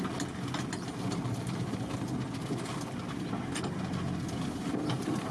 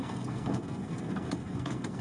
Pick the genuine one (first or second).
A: first